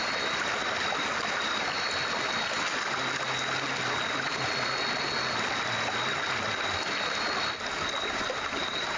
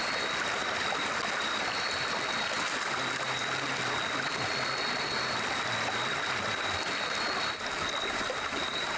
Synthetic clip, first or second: second